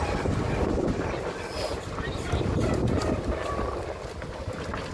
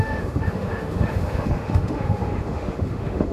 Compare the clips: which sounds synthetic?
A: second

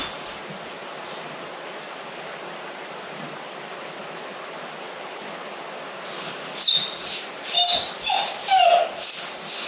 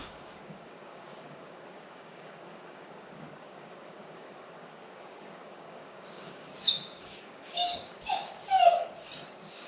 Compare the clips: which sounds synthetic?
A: second